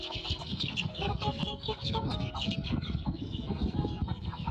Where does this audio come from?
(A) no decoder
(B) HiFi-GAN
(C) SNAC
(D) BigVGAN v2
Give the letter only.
C